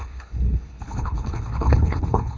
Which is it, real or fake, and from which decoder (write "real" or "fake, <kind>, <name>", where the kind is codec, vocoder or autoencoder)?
fake, codec, HILCodec